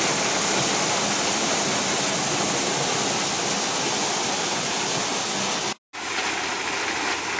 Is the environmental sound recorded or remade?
recorded